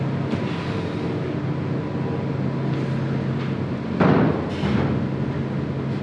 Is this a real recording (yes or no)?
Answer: yes